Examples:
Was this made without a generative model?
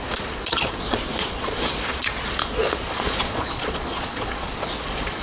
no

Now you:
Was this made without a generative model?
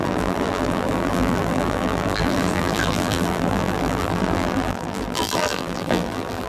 no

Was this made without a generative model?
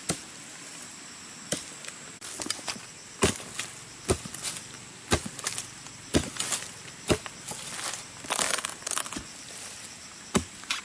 yes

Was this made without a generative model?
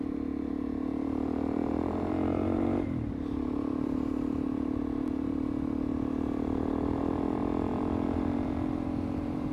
no